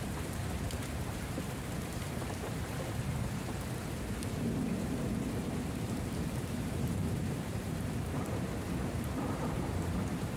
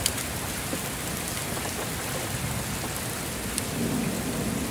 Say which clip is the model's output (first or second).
first